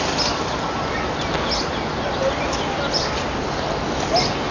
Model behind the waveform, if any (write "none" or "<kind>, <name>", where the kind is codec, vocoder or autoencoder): none